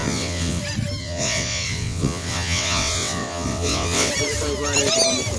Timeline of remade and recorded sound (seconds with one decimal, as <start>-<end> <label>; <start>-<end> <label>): 0.0-0.6 remade; 0.6-1.0 recorded; 1.0-4.1 remade; 4.1-5.4 recorded